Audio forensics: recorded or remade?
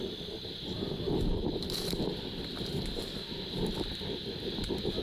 recorded